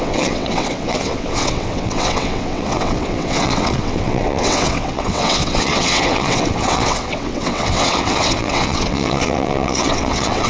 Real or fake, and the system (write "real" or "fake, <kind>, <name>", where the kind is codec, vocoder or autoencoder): fake, vocoder, WaveNeXt